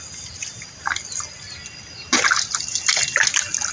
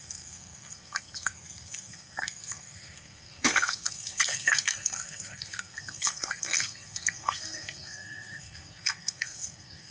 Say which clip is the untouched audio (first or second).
first